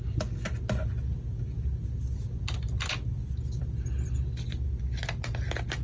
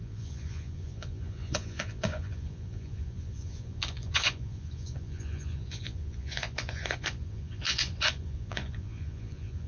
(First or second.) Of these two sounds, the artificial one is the second